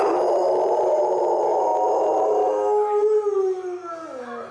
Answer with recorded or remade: recorded